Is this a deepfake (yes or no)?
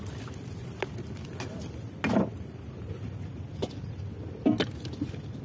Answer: no